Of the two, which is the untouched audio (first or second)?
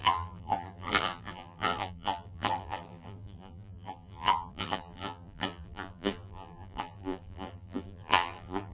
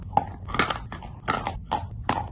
second